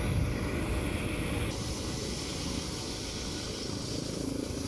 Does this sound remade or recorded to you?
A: remade